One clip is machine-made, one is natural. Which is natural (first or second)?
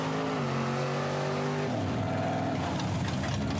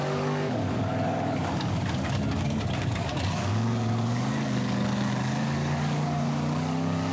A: first